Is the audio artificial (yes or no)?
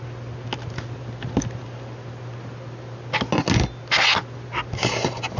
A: no